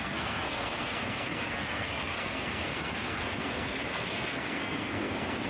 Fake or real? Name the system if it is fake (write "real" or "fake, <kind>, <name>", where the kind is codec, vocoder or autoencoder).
fake, codec, SNAC